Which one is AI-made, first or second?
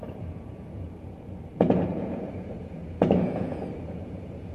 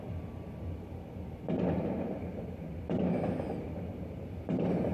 first